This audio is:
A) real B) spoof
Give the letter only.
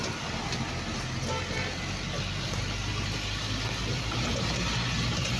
A